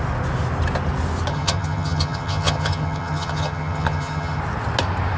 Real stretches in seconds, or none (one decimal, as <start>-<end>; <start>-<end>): 0.0-1.3; 4.4-5.2